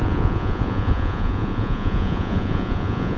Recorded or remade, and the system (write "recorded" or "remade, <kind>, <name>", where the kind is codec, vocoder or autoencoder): remade, vocoder, Vocos